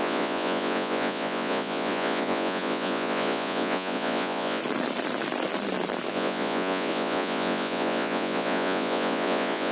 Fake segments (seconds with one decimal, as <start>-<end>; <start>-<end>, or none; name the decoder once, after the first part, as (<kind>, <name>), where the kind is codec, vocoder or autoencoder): 0.0-4.6 (vocoder, Vocos); 6.1-9.7